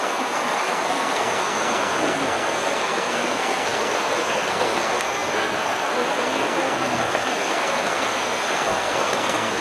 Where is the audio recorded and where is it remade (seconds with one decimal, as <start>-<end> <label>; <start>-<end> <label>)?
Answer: 0.0-9.6 remade